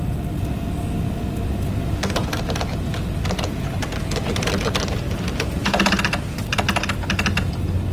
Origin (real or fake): real